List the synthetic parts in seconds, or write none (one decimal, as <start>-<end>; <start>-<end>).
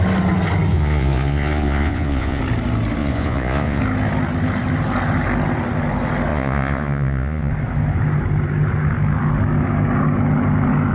0.7-2.4; 3.0-3.8; 6.3-7.5